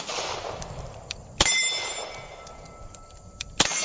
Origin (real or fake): fake